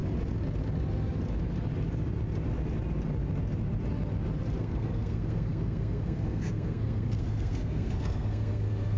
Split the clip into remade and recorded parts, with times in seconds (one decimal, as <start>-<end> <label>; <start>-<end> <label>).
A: 0.0-4.6 recorded; 4.6-9.0 remade